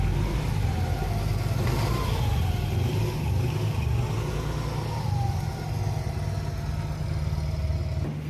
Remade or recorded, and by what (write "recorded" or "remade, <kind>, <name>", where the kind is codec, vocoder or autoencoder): recorded